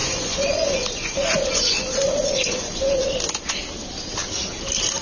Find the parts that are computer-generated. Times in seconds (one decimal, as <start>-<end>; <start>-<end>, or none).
0.0-3.0